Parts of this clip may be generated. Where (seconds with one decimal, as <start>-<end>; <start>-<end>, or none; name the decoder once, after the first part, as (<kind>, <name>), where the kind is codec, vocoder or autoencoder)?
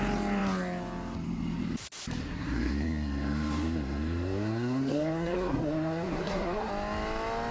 2.2-6.7 (codec, SNAC)